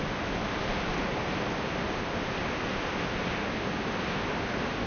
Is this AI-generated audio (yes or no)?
no